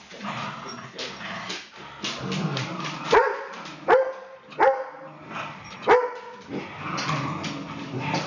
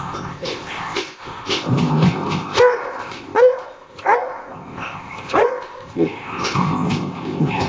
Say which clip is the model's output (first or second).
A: second